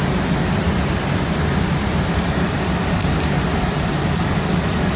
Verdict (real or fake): real